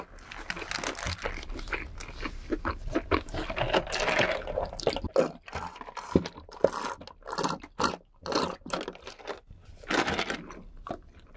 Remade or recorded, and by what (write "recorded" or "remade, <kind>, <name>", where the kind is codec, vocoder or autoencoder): recorded